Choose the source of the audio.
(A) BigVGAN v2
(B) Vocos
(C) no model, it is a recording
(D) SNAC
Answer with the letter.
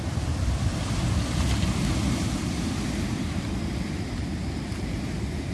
C